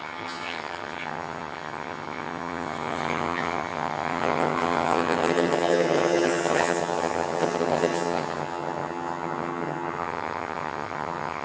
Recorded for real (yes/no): no